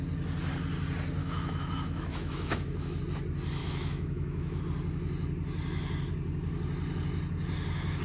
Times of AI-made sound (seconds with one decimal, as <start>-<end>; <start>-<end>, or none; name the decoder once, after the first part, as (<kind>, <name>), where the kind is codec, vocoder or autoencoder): 1.2-3.0 (autoencoder, DAC-VAE); 3.6-4.6